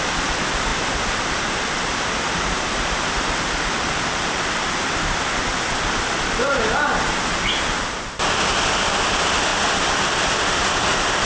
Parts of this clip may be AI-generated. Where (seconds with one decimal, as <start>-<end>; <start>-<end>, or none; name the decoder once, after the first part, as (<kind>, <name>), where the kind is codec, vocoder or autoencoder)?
none